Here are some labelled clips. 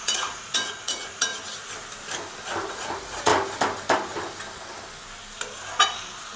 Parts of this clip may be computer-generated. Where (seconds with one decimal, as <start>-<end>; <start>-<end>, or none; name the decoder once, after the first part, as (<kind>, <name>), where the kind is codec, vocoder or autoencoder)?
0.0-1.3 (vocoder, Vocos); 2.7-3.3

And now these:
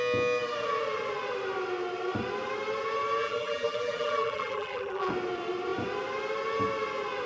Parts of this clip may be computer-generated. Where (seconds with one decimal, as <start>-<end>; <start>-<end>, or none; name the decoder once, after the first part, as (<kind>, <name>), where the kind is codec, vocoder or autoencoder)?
3.2-5.1 (vocoder, BigVGAN v2)

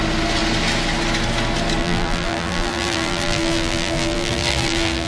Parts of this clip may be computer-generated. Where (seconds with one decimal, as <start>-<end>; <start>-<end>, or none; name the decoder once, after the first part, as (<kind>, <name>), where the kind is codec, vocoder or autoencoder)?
1.8-5.1 (vocoder, BigVGAN v2)

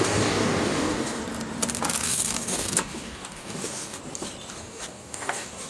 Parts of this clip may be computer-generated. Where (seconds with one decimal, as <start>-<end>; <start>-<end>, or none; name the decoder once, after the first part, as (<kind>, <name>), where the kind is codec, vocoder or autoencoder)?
0.0-1.2 (codec, DAC); 2.0-4.0; 4.5-5.7

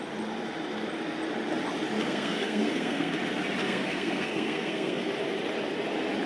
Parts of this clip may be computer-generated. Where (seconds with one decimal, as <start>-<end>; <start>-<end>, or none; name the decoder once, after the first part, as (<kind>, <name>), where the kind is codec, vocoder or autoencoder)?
2.0-3.2 (codec, SNAC); 3.6-5.1

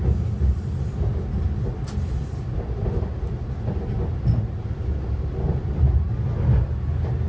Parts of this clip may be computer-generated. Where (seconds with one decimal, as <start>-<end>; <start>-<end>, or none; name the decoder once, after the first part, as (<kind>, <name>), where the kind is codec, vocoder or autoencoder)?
none